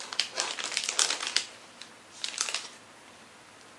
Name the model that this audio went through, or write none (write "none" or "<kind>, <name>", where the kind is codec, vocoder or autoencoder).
none